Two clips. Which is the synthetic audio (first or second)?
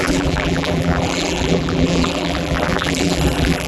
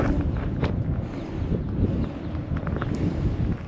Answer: first